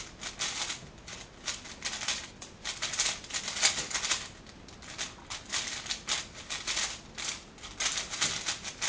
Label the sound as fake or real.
real